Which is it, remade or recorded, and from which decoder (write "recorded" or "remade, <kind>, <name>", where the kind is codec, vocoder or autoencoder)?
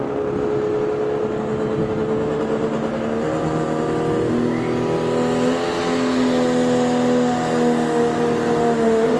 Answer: recorded